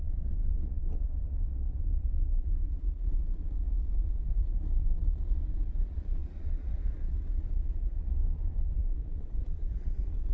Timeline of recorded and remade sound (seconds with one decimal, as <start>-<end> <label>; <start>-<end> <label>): 0.0-10.3 remade